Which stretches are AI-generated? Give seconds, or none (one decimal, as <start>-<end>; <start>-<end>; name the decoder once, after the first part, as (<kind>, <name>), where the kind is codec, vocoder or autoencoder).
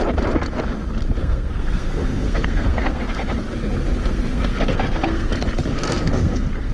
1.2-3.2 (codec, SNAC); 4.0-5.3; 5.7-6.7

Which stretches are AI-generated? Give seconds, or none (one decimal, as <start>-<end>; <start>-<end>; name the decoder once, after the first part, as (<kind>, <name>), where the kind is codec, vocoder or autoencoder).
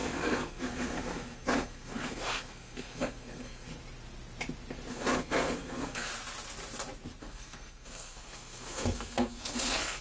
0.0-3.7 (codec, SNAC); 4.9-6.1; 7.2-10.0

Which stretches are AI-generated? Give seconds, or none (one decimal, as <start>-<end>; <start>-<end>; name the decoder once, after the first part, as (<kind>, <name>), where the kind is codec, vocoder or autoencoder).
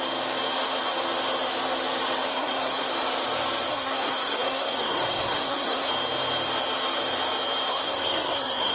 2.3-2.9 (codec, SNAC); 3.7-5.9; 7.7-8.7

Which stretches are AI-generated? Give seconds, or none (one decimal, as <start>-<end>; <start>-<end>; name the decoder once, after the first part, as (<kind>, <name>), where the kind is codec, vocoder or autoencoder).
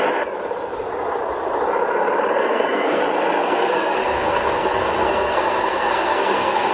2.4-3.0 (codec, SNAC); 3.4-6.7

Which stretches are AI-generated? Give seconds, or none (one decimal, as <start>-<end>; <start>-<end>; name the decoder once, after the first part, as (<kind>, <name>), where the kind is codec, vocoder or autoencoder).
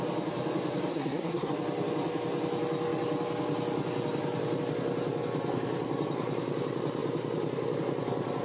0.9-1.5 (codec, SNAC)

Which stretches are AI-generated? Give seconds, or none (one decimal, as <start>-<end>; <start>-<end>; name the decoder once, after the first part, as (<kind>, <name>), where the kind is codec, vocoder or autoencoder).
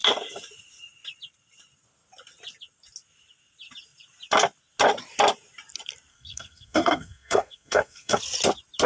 6.1-8.2 (codec, SNAC)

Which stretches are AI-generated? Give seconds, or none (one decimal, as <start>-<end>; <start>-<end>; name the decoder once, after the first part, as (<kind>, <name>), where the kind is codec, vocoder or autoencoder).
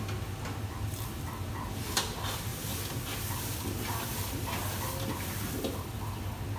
none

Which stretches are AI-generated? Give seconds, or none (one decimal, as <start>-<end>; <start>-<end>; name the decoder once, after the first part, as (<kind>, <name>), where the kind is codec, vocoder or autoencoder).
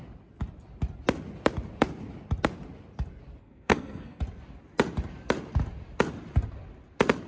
3.4-4.2 (codec, SNAC)